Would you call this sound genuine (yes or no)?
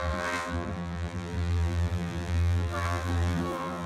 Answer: no